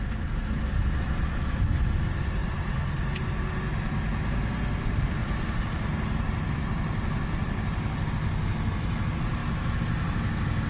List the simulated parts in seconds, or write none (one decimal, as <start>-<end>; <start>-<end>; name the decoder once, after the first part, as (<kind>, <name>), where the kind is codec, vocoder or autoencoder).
5.2-8.1 (vocoder, BigVGAN v2)